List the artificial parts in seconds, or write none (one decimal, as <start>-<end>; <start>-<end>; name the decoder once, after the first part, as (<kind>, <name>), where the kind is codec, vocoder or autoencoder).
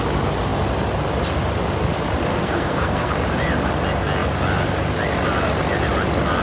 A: 2.3-3.1 (codec, SNAC)